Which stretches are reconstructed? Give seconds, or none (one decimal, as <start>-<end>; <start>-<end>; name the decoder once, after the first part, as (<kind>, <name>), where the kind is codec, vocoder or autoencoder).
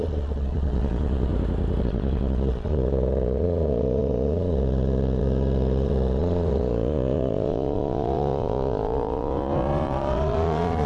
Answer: 0.0-1.3 (vocoder, Vocos); 1.8-10.9